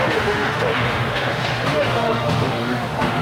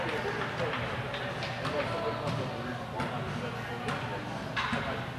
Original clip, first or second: second